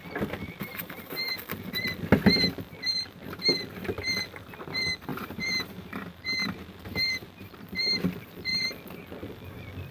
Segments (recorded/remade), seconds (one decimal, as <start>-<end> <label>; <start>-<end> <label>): 0.0-0.4 recorded; 0.4-1.8 remade; 1.8-5.1 recorded; 5.1-7.5 remade; 7.5-9.9 recorded